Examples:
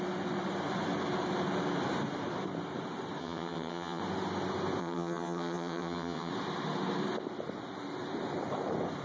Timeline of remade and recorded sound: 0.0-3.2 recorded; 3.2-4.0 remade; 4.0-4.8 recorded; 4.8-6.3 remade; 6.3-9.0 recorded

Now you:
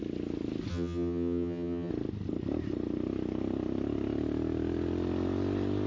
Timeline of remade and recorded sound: 0.0-0.7 recorded; 0.7-1.9 remade; 1.9-5.9 recorded

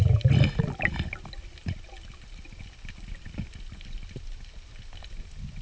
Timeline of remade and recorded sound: 0.0-5.6 recorded

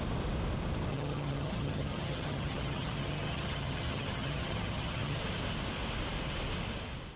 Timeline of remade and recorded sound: 0.0-0.9 recorded; 0.9-5.2 remade; 5.2-7.2 recorded